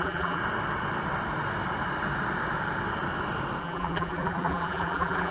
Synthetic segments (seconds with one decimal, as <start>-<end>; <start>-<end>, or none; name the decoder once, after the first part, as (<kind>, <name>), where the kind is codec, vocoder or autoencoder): 0.0-0.4 (vocoder, BigVGAN v2); 3.6-5.3